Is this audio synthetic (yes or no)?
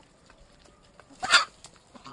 no